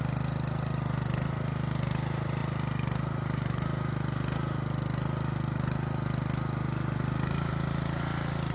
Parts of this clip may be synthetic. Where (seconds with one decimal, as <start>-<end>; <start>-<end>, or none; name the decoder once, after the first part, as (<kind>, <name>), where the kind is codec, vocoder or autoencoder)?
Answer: none